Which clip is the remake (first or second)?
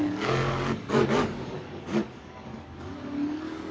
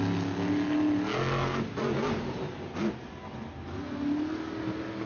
first